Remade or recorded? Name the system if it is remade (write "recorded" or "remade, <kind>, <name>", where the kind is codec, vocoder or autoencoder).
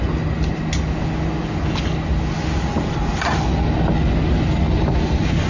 recorded